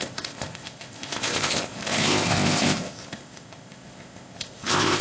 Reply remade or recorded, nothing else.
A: remade